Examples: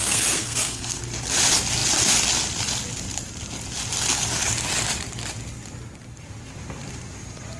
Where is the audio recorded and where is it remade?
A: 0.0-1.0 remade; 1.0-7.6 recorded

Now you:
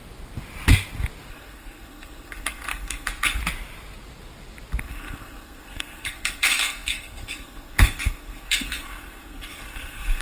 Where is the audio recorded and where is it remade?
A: 0.0-1.3 recorded; 1.3-3.4 remade; 3.4-4.8 recorded; 4.8-10.2 remade

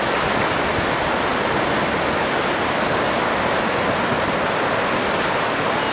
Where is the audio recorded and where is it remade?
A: 0.0-5.9 recorded